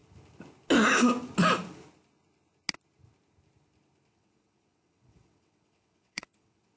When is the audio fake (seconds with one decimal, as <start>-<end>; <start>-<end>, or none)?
4.1-6.8